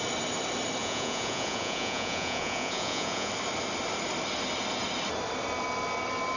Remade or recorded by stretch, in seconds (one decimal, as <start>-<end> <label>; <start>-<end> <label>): 0.0-0.8 recorded; 0.8-3.3 remade; 3.3-6.4 recorded